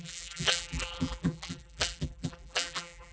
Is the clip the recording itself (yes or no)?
no